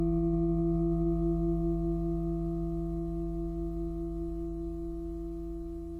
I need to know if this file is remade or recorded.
recorded